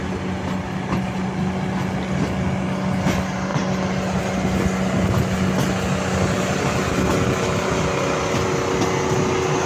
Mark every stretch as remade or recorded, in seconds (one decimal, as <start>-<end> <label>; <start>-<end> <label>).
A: 0.0-9.7 recorded